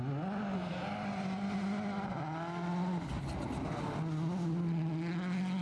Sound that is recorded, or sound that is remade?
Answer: recorded